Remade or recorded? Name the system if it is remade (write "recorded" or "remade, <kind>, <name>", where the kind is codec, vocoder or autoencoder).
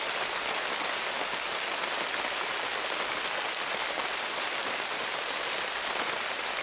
recorded